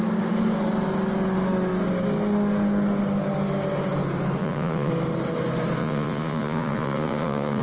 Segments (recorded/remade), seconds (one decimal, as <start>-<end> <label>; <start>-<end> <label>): 0.0-4.4 recorded; 4.4-4.9 remade; 4.9-5.8 recorded; 5.8-7.6 remade